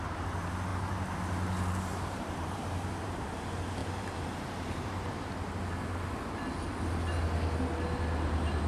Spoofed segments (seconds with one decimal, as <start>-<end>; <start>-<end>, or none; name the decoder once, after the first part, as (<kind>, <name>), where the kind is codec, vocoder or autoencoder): 0.7-1.2 (vocoder, BigVGAN v2); 1.9-3.3; 3.8-5.3